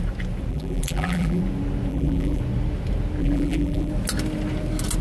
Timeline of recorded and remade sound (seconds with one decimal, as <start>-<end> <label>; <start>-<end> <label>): 0.0-0.5 recorded; 0.5-1.4 remade; 1.4-1.9 recorded; 1.9-2.4 remade; 2.4-3.2 recorded; 3.2-3.9 remade; 3.9-5.0 recorded